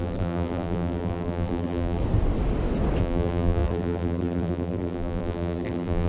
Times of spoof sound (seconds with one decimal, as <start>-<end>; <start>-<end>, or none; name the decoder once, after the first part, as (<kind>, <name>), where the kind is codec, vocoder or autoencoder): 0.0-2.0 (vocoder, BigVGAN v2); 3.0-6.1